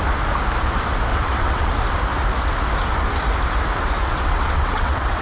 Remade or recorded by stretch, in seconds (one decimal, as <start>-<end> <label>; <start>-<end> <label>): 0.0-1.1 recorded; 1.1-1.7 remade; 1.7-4.0 recorded; 4.0-5.2 remade